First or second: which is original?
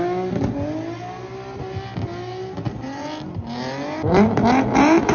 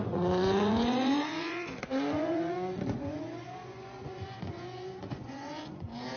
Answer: first